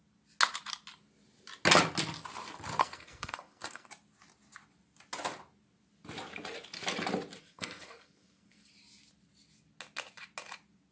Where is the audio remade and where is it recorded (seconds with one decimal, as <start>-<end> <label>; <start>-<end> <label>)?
0.0-2.8 recorded; 2.8-3.9 remade; 3.9-7.4 recorded; 7.4-8.7 remade; 8.7-10.9 recorded